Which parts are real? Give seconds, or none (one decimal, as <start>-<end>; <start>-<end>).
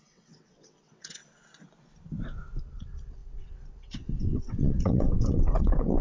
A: 1.2-2.6